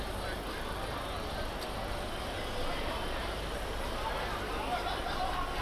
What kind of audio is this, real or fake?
real